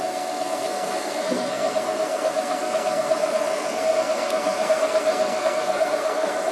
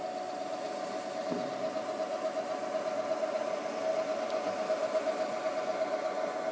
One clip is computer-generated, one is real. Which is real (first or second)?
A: second